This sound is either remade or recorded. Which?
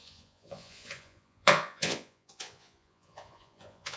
remade